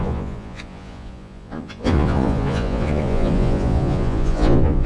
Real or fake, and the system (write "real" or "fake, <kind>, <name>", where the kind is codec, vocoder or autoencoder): fake, vocoder, Vocos